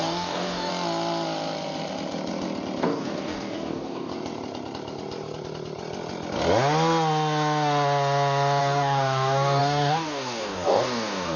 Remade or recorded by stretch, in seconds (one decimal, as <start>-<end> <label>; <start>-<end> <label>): 0.0-0.7 remade; 0.7-2.8 recorded; 2.8-4.1 remade; 4.1-8.6 recorded; 8.6-11.4 remade